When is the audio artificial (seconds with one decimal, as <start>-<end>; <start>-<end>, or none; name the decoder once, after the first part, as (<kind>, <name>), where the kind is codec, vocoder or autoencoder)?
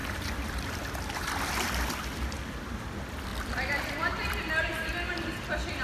0.0-1.9 (vocoder, BigVGAN v2); 3.3-4.9